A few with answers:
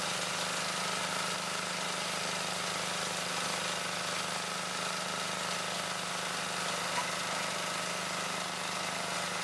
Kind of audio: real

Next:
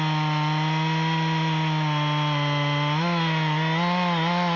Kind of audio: real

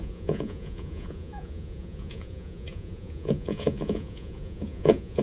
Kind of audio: fake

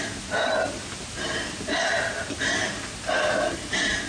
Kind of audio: real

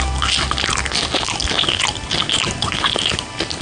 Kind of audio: real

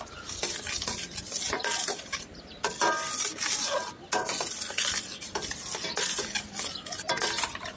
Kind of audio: real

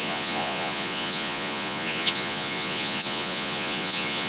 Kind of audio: fake